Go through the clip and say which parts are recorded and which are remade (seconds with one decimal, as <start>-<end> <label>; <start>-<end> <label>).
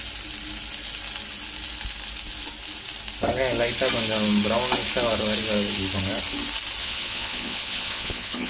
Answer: 0.0-6.8 recorded; 6.8-8.5 remade